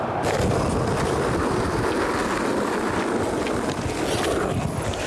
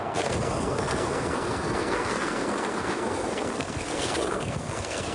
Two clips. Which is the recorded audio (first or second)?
first